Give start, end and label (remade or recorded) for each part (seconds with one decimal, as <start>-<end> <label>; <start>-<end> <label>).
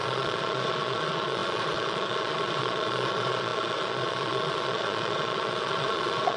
0.0-6.4 remade